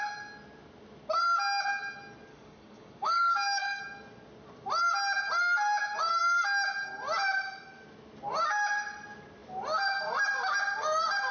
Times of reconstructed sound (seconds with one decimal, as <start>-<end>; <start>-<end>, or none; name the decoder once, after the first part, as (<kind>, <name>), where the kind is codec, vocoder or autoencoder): 2.3-3.8 (codec, DAC)